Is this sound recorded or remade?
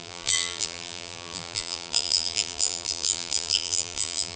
remade